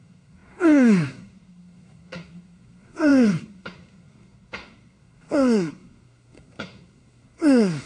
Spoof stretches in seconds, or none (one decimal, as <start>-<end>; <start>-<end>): 0.0-7.9